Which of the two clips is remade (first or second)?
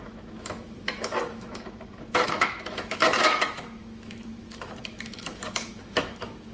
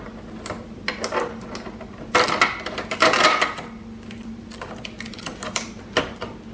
first